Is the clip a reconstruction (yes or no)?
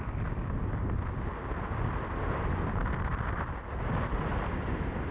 no